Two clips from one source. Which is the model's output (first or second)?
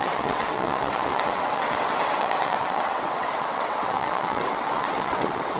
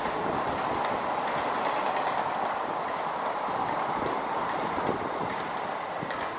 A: first